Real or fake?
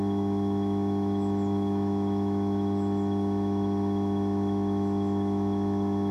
fake